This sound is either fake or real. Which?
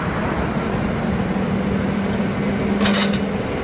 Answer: real